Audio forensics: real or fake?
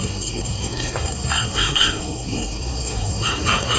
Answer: fake